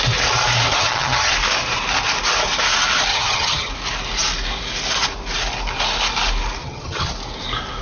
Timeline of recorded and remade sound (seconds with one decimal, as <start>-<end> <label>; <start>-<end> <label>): 0.0-0.7 recorded; 0.7-1.3 remade; 1.3-3.1 recorded; 3.1-3.7 remade; 3.7-6.6 recorded; 6.6-7.1 remade; 7.1-7.8 recorded